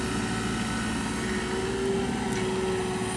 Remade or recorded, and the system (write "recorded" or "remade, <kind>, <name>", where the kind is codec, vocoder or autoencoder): recorded